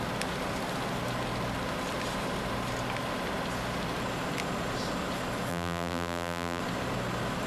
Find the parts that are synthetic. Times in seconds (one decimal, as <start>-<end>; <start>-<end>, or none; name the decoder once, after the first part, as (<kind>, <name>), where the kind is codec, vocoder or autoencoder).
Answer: 5.5-6.6 (vocoder, BigVGAN v2)